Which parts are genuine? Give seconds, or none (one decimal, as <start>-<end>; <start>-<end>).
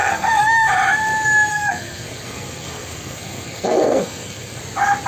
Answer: 0.7-1.5; 4.6-5.1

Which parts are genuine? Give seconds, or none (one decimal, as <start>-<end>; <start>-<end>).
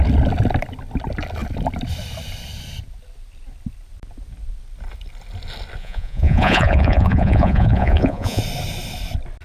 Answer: 0.0-5.8; 8.4-9.4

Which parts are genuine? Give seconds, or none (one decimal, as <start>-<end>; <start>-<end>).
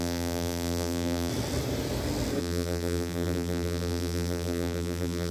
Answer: 1.3-2.4